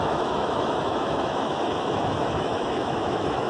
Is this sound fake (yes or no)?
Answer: yes